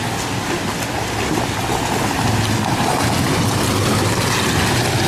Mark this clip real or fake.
real